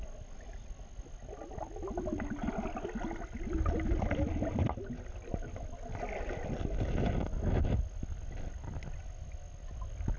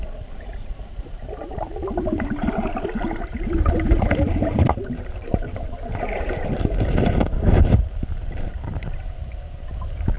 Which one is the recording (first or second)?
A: first